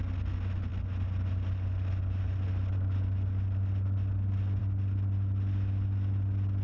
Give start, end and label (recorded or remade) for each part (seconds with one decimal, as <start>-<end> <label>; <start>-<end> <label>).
0.0-6.6 recorded